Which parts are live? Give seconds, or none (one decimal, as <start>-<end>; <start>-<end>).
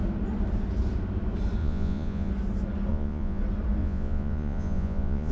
0.0-1.6; 2.3-2.9; 3.4-3.8